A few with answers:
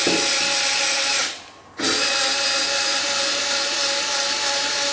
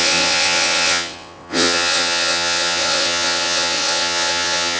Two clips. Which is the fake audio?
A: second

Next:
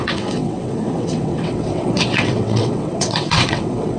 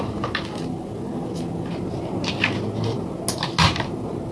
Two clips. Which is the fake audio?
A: first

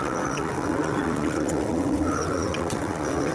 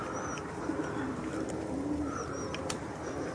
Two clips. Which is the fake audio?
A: first